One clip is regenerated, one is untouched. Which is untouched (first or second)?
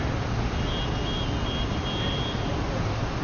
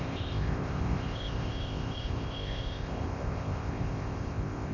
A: first